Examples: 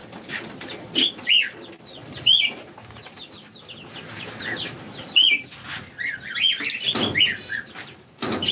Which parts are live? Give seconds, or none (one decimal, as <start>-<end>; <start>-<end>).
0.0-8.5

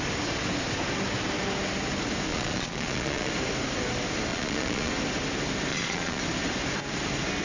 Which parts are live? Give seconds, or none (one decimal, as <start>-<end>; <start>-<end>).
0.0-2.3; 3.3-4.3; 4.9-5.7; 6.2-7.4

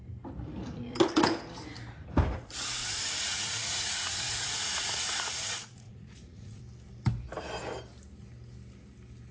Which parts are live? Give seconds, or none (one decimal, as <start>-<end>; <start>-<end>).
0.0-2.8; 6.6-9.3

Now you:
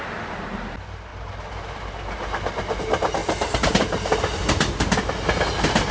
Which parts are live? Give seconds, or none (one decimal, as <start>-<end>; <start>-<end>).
0.0-5.9

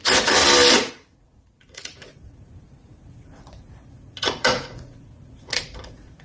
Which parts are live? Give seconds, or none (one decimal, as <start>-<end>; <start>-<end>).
0.4-0.9